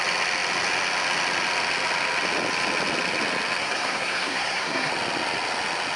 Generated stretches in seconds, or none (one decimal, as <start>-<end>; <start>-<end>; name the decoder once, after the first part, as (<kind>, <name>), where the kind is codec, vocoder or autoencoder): 3.6-4.9 (codec, SNAC)